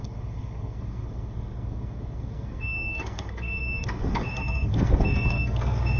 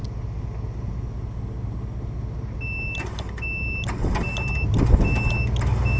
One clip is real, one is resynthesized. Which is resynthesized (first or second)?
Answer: first